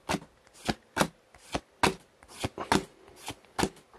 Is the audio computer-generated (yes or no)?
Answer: no